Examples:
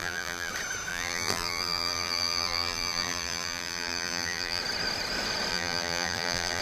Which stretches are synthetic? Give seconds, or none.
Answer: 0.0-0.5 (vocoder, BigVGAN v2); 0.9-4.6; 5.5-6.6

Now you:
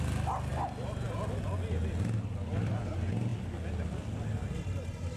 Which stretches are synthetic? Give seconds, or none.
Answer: none

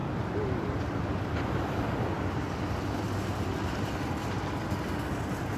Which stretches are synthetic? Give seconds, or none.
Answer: 0.0-1.0 (vocoder, BigVGAN v2)